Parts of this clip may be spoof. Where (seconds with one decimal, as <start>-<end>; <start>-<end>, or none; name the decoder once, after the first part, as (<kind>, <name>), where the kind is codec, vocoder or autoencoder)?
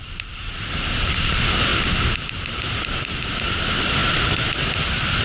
0.0-1.7 (vocoder, BigVGAN v2); 2.2-5.2